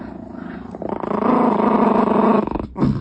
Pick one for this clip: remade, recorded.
recorded